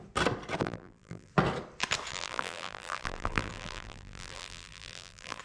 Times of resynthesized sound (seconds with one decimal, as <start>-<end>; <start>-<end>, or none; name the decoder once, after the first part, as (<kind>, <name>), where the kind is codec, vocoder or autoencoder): 0.6-1.3 (vocoder, BigVGAN v2); 2.1-5.4